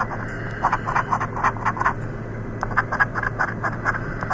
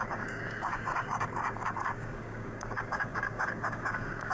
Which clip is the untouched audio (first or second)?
first